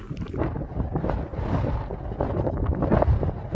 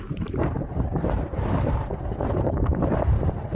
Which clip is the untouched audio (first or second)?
first